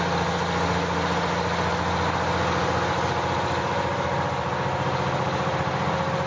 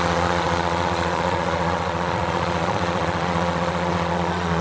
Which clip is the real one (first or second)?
first